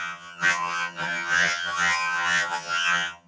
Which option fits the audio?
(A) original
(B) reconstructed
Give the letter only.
B